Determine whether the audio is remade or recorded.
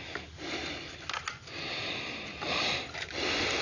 recorded